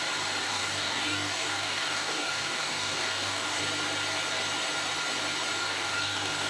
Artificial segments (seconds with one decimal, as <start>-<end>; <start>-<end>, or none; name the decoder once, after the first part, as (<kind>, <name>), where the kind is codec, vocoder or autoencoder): 0.5-3.6 (codec, DAC); 5.6-6.5